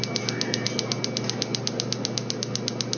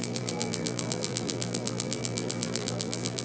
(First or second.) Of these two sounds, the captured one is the first